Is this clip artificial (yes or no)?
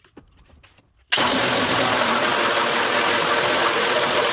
no